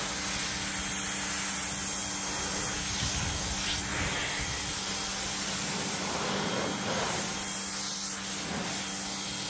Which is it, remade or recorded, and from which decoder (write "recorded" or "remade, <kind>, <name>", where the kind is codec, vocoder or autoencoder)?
recorded